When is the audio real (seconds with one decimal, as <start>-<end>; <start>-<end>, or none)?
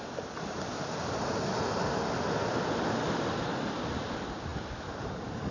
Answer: 0.0-5.5